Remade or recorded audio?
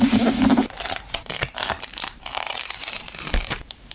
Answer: remade